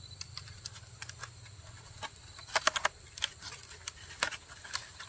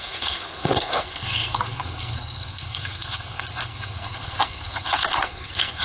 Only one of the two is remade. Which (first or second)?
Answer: second